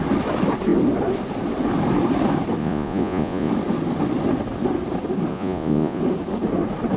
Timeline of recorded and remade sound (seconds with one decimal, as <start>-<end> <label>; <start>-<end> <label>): 0.0-2.6 recorded; 2.6-3.5 remade; 3.5-5.3 recorded; 5.3-6.0 remade; 6.0-7.0 recorded